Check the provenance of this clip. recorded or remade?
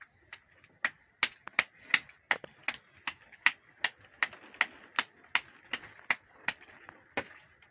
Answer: recorded